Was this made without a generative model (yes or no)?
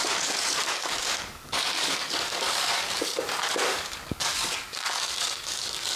no